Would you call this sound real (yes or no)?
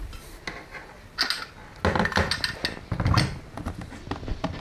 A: yes